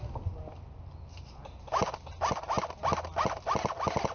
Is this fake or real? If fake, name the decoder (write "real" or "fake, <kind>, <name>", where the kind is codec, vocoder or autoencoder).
real